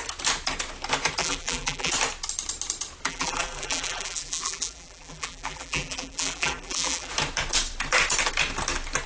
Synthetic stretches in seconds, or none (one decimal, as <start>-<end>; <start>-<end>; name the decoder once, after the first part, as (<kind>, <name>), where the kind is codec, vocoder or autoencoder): 1.2-1.9 (vocoder, BigVGAN v2); 3.1-7.1